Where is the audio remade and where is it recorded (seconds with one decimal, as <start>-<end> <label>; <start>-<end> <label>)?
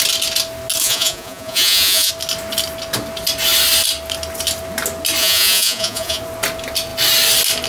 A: 0.0-0.8 recorded; 0.8-2.1 remade; 2.1-5.2 recorded; 5.2-6.2 remade; 6.2-7.7 recorded